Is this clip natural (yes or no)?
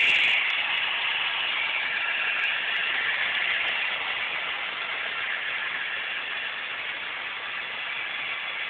yes